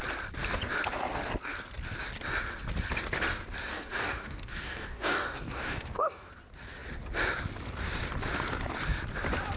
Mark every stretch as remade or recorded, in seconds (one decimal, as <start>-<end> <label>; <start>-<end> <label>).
0.0-3.7 recorded; 3.7-6.3 remade; 6.3-9.6 recorded